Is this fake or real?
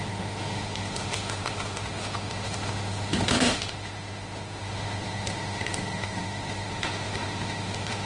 fake